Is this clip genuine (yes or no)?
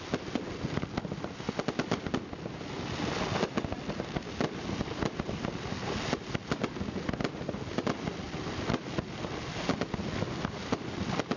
yes